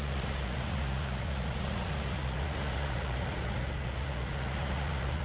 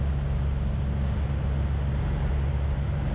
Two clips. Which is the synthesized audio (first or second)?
first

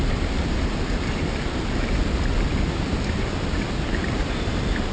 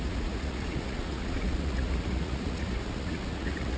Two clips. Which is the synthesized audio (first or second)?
second